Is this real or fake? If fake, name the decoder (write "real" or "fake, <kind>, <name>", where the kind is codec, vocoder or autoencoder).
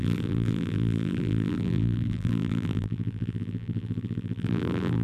fake, vocoder, BigVGAN v2